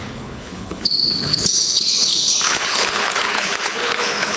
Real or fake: fake